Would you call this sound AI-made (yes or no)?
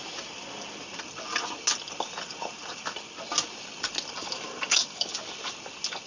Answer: no